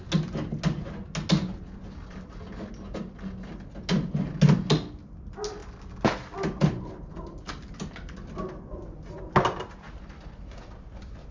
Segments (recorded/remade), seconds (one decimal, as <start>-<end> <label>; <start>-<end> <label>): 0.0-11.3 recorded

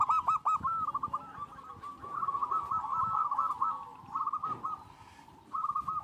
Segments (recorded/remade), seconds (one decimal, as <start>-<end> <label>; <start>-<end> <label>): 0.0-6.0 recorded

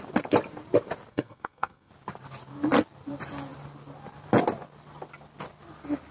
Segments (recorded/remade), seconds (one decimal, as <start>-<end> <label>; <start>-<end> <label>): 0.0-1.1 recorded; 1.1-1.9 remade; 1.9-6.1 recorded

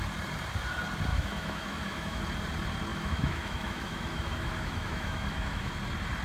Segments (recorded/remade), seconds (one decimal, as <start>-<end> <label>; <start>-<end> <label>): 0.0-1.1 recorded; 1.1-2.2 remade; 2.2-2.9 recorded; 2.9-5.7 remade; 5.7-6.2 recorded